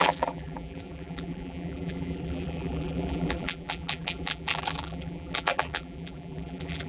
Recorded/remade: remade